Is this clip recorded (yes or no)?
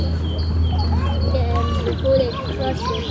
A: yes